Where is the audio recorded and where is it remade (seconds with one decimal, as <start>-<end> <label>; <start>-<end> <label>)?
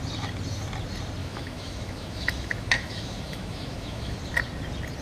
0.0-1.2 recorded; 1.2-4.2 remade; 4.2-5.0 recorded